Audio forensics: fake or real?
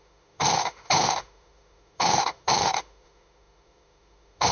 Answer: fake